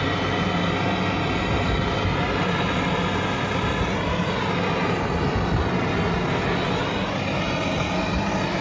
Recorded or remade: recorded